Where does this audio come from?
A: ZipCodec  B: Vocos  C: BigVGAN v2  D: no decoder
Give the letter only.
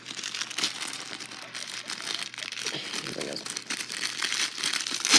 D